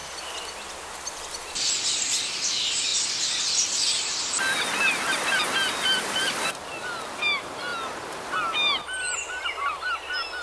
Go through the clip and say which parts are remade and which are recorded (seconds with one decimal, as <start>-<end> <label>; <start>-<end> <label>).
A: 0.0-10.4 recorded